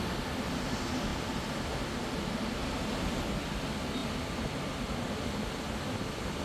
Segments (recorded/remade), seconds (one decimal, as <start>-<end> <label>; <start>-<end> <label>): 0.0-2.6 recorded; 2.6-3.2 remade; 3.2-6.4 recorded